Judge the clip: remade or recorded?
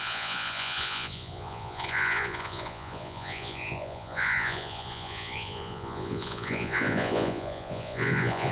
remade